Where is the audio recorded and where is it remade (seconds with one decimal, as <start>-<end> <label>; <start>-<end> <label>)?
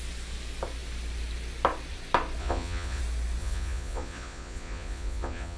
0.0-2.4 recorded; 2.4-3.0 remade; 3.0-3.4 recorded; 3.4-5.6 remade